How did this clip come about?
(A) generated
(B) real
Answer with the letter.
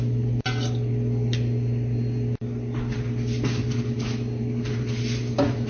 B